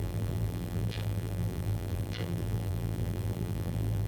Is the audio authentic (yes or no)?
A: no